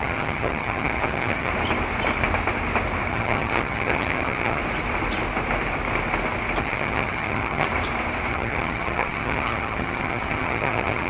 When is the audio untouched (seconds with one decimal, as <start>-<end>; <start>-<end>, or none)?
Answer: 1.5-3.1; 4.6-6.6; 7.7-8.3